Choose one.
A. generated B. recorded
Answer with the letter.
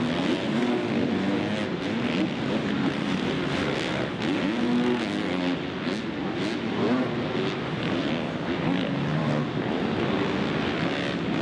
B